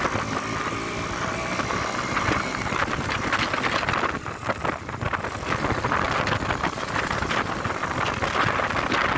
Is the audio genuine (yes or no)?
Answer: yes